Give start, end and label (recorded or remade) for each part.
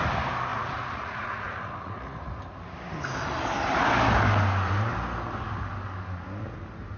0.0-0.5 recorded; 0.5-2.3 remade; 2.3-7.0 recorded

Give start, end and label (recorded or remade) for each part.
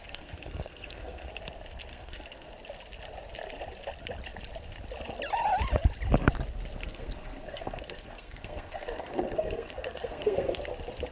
0.0-1.3 remade; 1.3-1.9 recorded; 1.9-2.5 remade; 2.5-6.8 recorded; 6.8-10.6 remade; 10.6-11.1 recorded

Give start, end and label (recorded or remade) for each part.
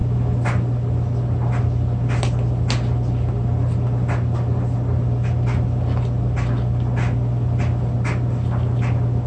0.0-9.3 recorded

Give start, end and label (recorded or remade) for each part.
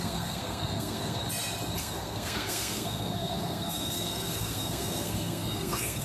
0.0-1.2 remade; 1.2-1.8 recorded; 1.8-6.0 remade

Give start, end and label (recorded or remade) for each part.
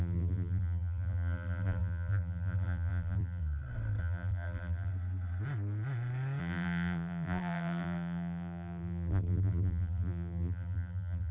0.0-3.4 remade; 3.4-4.0 recorded; 4.0-4.9 remade; 4.9-6.4 recorded; 6.4-11.3 remade